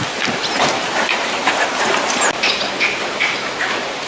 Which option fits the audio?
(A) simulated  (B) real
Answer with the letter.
A